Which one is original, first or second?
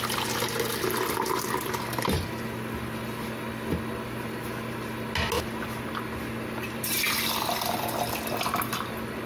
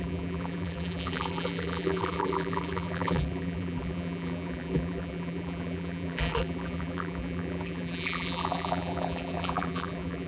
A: first